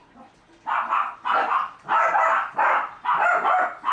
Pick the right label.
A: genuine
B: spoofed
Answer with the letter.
A